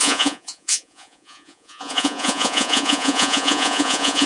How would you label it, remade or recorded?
remade